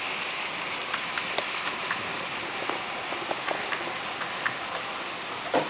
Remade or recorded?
remade